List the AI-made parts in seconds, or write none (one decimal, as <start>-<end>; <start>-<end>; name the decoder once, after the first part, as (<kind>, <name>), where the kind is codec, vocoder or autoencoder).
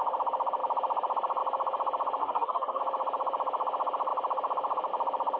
2.2-2.8 (codec, DAC)